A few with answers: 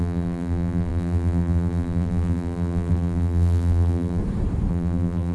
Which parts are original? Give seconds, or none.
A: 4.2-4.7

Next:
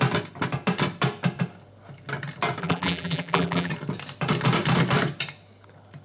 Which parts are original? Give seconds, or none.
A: 0.0-2.6; 3.7-6.0

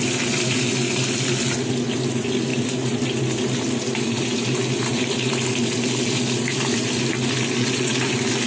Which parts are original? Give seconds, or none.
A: 0.0-7.6; 8.1-8.5

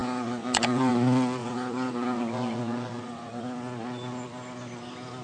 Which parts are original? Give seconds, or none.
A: 0.9-1.4; 3.4-5.2

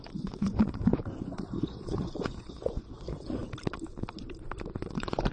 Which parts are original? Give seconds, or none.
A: 3.4-4.8

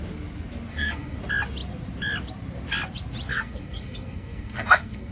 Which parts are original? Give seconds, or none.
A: 0.0-0.7; 1.2-3.3

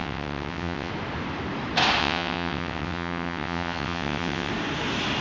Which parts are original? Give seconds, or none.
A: 0.9-2.0; 4.5-5.2

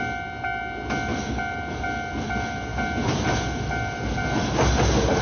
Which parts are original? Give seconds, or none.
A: 0.0-5.2